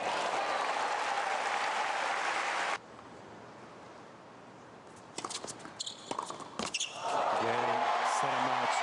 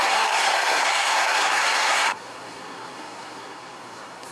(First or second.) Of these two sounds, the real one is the first